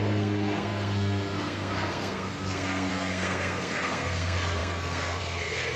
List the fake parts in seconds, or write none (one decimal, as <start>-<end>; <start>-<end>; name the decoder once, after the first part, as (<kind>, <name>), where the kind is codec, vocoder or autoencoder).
0.0-5.8 (codec, SNAC)